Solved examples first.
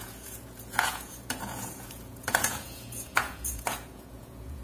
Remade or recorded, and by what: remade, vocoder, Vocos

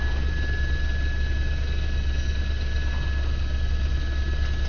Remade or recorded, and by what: recorded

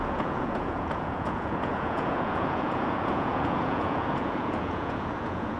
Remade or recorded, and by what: remade, vocoder, Vocos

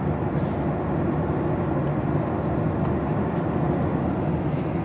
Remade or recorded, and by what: recorded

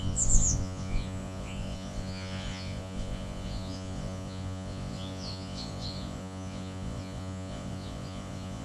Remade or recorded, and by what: remade, vocoder, Vocos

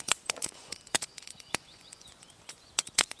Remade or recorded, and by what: remade, vocoder, Vocos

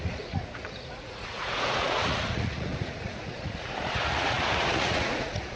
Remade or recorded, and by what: remade, vocoder, Vocos